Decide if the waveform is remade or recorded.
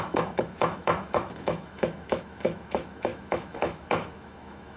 remade